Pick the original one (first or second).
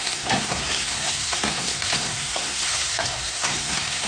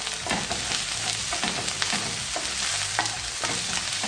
second